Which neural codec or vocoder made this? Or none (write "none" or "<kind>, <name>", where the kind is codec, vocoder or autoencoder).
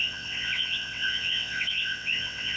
vocoder, WaveNeXt